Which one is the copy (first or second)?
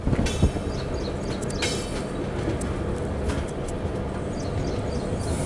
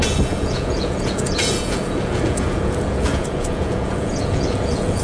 second